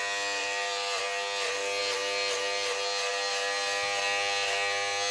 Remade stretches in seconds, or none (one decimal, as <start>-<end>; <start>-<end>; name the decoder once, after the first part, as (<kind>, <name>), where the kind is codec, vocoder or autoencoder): 0.4-1.0 (vocoder, BigVGAN v2)